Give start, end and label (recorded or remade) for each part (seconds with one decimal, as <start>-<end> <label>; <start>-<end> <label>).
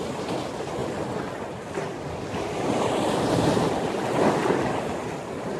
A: 0.0-5.6 recorded